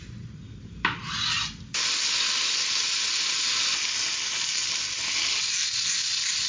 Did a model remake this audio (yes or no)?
no